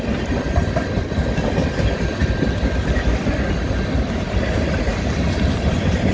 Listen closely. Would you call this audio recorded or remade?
recorded